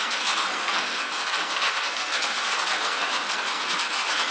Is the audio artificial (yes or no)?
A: yes